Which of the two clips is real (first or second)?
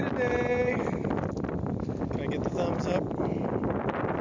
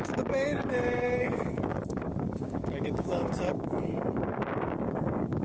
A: first